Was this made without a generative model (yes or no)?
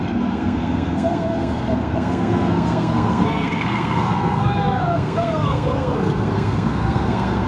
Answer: no